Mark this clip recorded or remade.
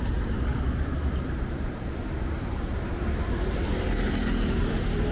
remade